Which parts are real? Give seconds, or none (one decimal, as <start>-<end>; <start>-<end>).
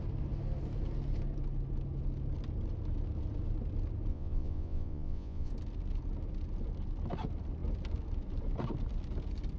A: 0.0-4.1; 5.5-9.6